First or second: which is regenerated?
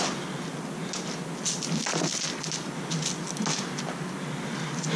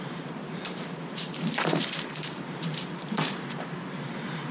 second